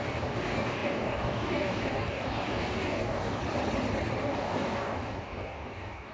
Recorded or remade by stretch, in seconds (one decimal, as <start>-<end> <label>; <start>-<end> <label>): 0.0-3.4 remade; 3.4-4.2 recorded; 4.2-6.1 remade